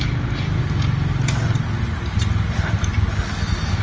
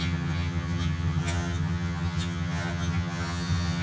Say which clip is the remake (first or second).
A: second